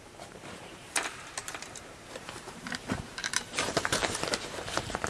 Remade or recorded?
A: remade